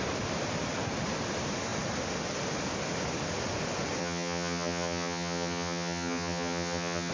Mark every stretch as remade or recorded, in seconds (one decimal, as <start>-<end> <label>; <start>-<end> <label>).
0.0-4.0 recorded; 4.0-7.1 remade